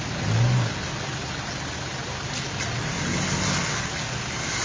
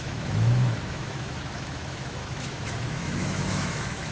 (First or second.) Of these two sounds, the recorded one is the first